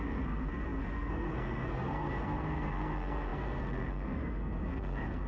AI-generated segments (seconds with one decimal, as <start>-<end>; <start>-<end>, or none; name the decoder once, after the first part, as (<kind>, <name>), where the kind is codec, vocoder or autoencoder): 0.0-5.3 (codec, SNAC)